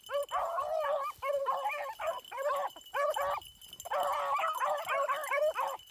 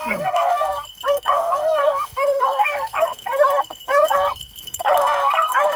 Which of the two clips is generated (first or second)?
second